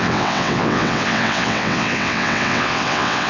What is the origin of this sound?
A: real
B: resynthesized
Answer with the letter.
B